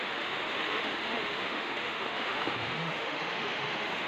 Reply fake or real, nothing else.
fake